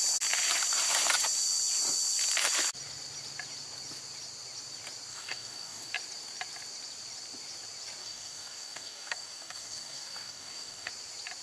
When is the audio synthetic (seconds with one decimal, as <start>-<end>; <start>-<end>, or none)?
5.1-5.9; 8.0-10.9

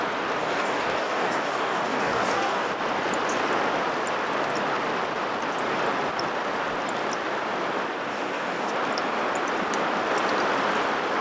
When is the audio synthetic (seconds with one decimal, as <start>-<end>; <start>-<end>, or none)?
0.4-2.7; 8.1-8.7

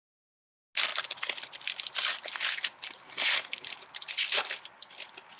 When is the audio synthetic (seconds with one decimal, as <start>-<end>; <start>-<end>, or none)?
none